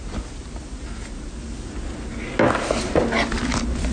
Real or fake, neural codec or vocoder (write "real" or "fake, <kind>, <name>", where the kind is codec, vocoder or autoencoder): real